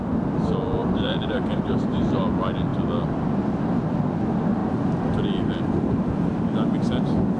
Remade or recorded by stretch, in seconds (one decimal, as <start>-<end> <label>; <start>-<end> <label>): 0.0-0.8 recorded; 0.8-2.2 remade; 2.2-7.4 recorded